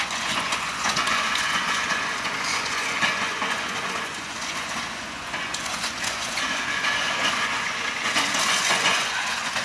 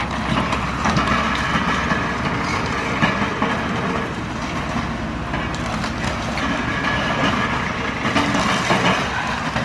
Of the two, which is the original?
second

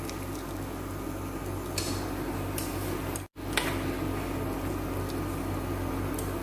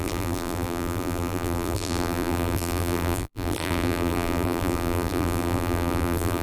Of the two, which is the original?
first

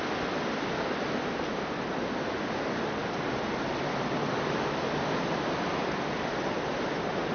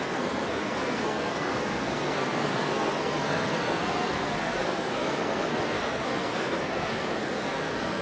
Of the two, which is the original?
first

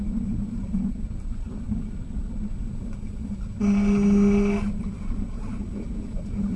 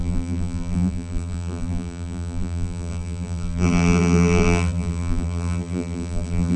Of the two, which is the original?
first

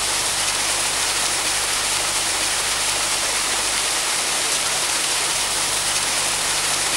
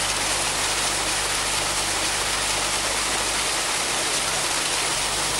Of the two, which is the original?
second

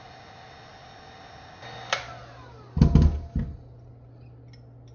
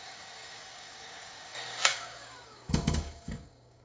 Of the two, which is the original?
first